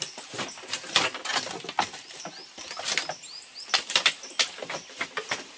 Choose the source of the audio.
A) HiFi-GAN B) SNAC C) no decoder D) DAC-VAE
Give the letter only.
C